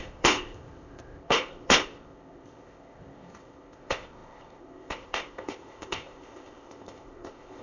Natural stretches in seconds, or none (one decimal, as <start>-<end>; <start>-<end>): none

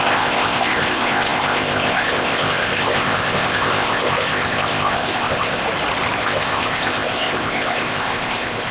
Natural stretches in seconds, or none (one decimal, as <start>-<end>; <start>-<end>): 5.6-6.2

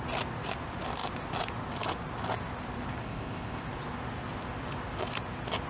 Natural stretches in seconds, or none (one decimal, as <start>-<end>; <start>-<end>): 0.0-3.0; 3.6-5.7

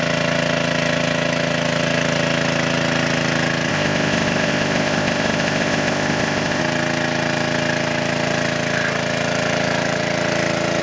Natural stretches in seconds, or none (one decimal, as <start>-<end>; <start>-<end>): 0.0-3.7; 6.6-10.8

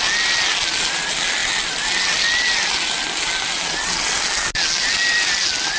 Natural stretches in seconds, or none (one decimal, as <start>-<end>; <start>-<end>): 0.0-5.8

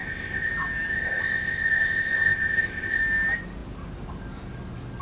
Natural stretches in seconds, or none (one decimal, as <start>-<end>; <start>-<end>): 0.5-0.9; 3.0-5.0

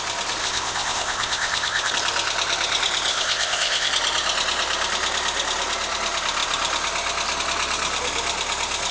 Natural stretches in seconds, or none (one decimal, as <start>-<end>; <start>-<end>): 0.0-0.4; 1.9-3.1; 3.9-8.9